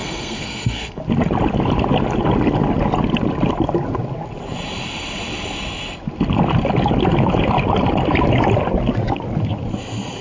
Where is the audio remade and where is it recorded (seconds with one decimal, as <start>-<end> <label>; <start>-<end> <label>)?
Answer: 0.0-1.0 remade; 1.0-10.2 recorded